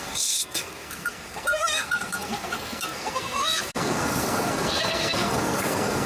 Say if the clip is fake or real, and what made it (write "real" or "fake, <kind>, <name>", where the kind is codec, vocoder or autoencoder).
fake, codec, SNAC